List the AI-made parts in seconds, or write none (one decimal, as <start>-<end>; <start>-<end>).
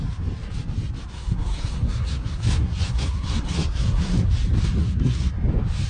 1.1-4.3; 4.8-5.3